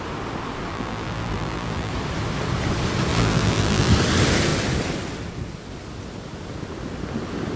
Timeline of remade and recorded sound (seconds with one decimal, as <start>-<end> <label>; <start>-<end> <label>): 0.0-0.7 recorded; 0.7-1.9 remade; 1.9-3.1 recorded; 3.1-3.9 remade; 3.9-7.6 recorded